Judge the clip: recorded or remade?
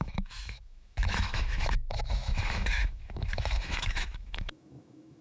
remade